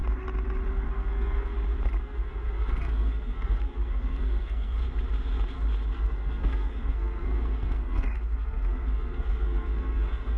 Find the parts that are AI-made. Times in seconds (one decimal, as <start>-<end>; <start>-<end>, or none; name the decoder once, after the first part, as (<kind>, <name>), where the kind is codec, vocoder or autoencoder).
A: 0.7-1.5 (codec, SNAC); 2.0-4.8; 5.9-10.4